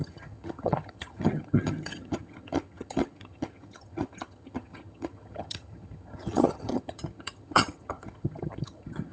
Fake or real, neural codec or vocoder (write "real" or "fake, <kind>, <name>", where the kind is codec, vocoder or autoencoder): fake, vocoder, HiFi-GAN